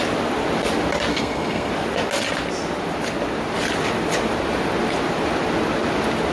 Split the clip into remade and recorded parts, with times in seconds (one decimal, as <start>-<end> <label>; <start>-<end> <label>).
0.0-1.1 recorded; 1.1-1.7 remade; 1.7-6.3 recorded